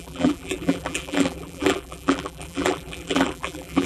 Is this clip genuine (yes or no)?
no